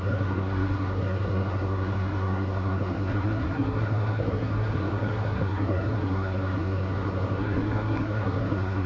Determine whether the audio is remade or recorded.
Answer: remade